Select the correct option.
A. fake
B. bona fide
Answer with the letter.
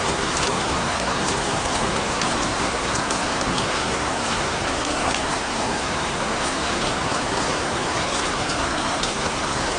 A